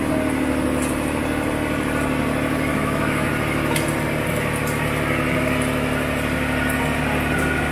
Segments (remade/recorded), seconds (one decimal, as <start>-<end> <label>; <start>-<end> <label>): 0.0-2.7 recorded; 2.7-3.3 remade; 3.3-7.7 recorded